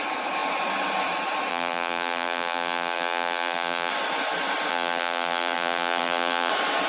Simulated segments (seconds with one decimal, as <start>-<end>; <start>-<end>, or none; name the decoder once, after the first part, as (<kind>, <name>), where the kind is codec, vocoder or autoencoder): 1.5-3.9 (vocoder, BigVGAN v2); 4.7-6.5